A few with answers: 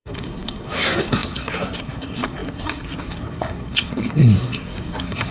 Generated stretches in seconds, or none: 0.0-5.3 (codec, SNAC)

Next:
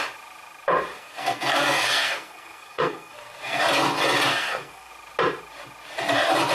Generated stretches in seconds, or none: 0.9-3.6 (codec, SNAC); 4.3-4.9

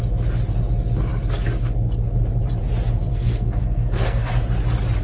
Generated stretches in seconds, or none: 3.1-4.3 (codec, SNAC)

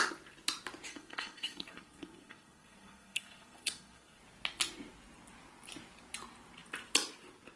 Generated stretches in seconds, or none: 0.9-4.2 (codec, SNAC)

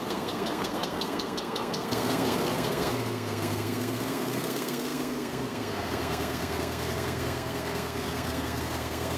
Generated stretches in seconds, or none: 0.0-9.2 (codec, SNAC)

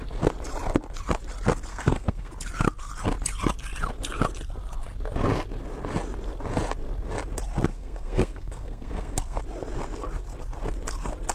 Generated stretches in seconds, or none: 1.7-2.3 (codec, SNAC); 7.7-9.4

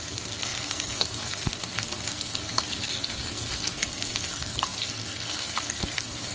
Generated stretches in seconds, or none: 0.0-6.3 (codec, SNAC)